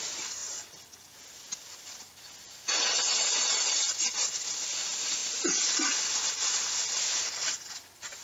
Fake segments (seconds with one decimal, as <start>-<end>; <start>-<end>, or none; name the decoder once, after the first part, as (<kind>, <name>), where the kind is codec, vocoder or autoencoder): none

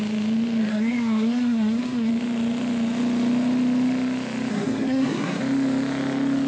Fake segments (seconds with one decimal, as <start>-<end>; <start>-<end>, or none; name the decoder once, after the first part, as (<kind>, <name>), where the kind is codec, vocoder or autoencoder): 0.7-2.1 (codec, SNAC); 4.5-5.4

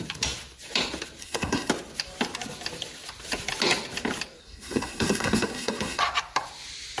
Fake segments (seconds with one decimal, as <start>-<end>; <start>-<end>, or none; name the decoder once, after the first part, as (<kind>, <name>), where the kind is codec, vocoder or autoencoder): 1.2-1.7 (codec, SNAC); 4.4-6.0

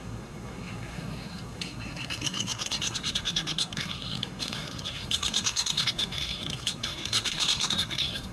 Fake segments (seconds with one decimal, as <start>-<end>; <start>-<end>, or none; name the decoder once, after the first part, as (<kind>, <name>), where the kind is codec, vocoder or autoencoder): 0.0-8.3 (codec, SNAC)

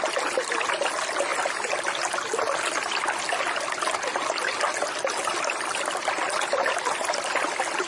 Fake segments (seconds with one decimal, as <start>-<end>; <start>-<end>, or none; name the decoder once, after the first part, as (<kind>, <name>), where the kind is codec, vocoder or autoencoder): none